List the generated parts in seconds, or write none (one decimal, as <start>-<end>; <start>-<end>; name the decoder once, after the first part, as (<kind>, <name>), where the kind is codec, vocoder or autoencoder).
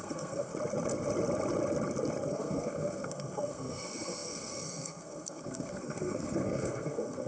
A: 0.0-0.5 (codec, SNAC); 2.3-7.3